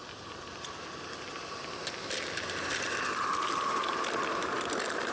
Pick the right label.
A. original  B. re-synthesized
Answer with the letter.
A